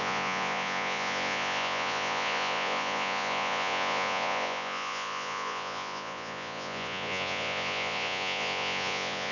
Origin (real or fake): fake